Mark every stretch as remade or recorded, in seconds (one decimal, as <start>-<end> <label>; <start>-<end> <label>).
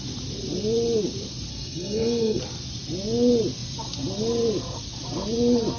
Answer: 0.0-1.5 recorded; 1.5-2.4 remade; 2.4-5.8 recorded